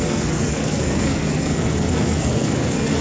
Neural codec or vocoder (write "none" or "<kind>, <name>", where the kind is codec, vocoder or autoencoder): codec, SNAC